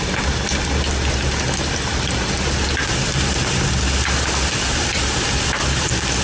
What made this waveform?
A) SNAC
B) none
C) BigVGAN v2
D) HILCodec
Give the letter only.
B